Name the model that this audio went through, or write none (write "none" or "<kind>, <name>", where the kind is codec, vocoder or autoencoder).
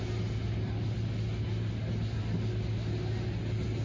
none